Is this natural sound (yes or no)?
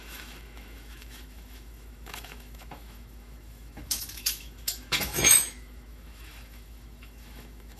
no